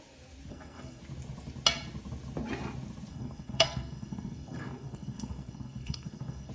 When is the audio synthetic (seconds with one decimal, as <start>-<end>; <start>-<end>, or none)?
0.5-1.0; 3.1-6.5